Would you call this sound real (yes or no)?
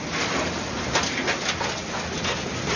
no